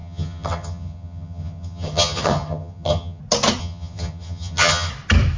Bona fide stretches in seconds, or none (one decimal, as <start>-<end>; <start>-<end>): 3.2-3.6; 4.9-5.4